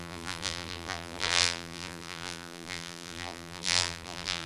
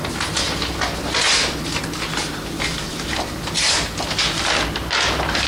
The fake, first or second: first